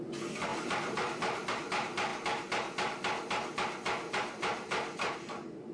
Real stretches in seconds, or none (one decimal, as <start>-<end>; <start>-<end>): 0.0-5.7